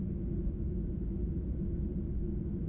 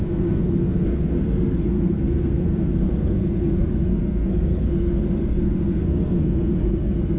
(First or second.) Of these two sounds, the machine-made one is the second